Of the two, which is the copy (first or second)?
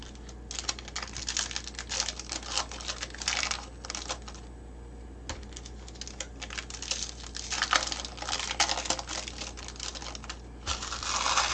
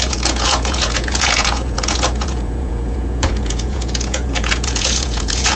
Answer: second